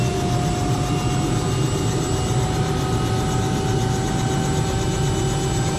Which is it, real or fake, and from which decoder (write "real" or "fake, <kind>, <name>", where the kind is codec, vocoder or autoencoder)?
real